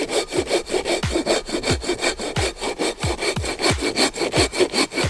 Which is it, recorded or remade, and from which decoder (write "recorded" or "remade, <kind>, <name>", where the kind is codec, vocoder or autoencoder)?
recorded